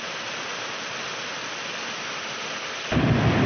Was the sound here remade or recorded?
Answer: recorded